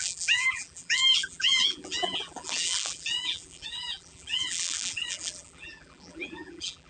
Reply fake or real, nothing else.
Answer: fake